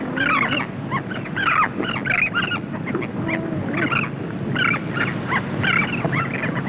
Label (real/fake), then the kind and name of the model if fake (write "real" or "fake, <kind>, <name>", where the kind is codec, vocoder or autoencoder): real